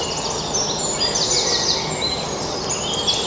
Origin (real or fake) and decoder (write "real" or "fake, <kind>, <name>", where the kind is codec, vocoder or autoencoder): real